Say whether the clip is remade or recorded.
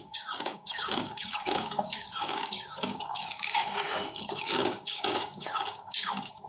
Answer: remade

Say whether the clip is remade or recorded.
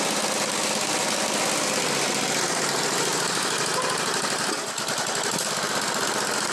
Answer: recorded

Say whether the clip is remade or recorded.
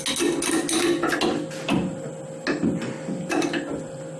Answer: recorded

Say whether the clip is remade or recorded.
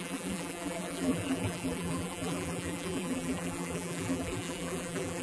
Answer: remade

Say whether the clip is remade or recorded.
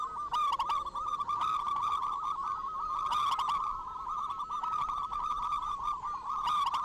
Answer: recorded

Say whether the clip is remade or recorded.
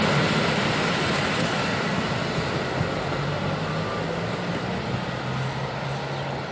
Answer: recorded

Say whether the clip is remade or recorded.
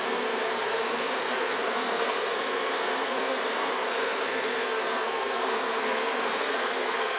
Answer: remade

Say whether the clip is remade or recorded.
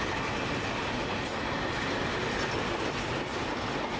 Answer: recorded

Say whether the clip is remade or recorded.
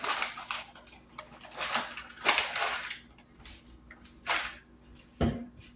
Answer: recorded